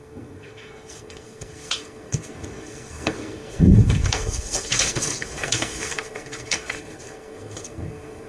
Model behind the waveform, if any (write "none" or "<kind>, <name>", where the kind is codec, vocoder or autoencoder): codec, SNAC